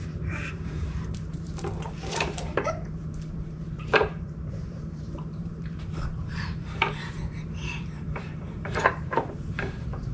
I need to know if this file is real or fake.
fake